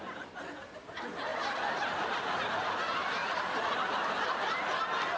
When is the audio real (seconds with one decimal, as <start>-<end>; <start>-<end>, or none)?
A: 0.0-1.3; 2.3-2.9; 4.8-5.2